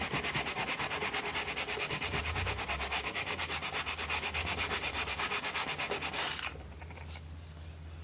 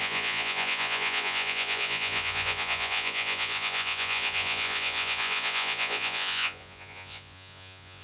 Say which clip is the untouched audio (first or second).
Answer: first